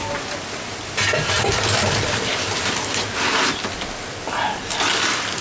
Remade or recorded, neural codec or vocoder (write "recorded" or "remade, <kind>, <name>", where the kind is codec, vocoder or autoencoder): recorded